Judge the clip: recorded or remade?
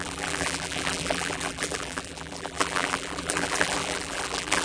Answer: remade